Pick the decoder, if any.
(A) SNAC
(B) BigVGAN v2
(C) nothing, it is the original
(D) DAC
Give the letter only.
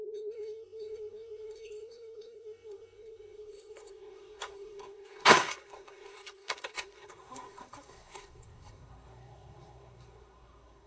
A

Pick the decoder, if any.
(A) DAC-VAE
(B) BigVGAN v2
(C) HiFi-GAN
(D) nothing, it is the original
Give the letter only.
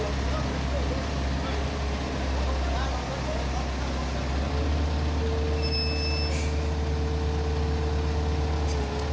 D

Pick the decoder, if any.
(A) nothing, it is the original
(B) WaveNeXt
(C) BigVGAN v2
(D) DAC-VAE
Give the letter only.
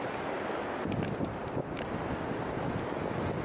A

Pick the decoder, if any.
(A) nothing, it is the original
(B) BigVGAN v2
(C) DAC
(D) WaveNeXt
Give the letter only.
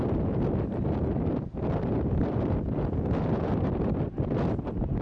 A